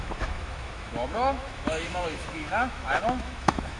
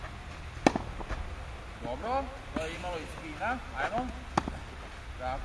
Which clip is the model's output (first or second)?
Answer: first